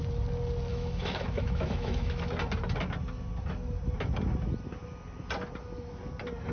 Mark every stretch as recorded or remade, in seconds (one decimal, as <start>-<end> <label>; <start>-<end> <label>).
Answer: 0.0-0.7 recorded; 0.7-2.3 remade; 2.3-6.5 recorded